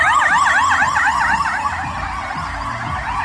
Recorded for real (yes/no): yes